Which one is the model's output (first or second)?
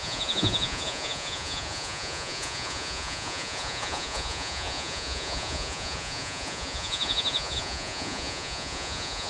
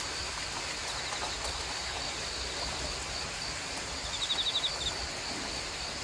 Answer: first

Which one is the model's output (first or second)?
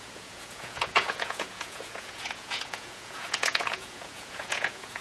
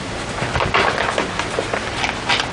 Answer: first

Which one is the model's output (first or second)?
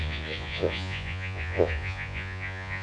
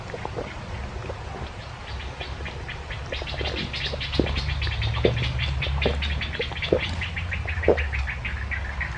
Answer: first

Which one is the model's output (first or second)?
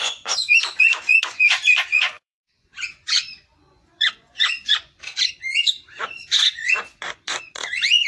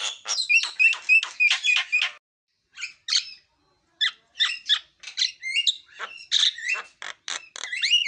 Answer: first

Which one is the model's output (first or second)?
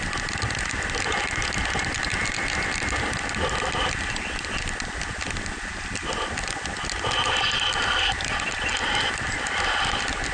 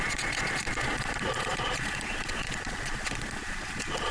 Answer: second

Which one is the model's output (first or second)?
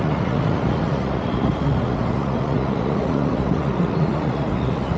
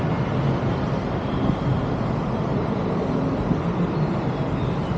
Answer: first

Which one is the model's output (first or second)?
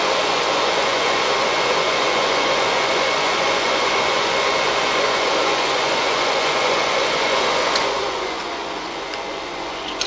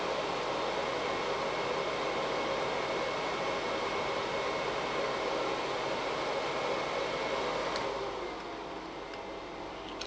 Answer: first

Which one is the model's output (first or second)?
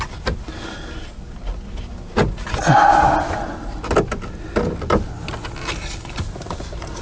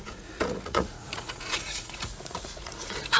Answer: second